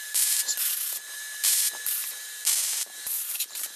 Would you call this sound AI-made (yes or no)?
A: yes